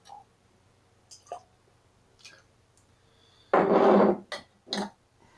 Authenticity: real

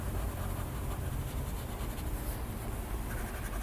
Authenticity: fake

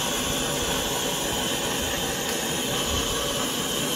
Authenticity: real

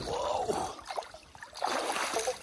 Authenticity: fake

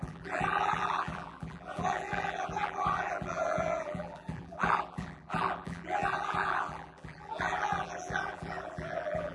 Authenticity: fake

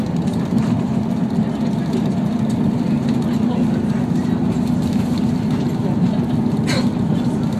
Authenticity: real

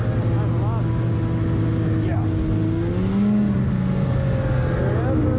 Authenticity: real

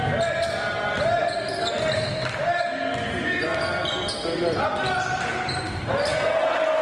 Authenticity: real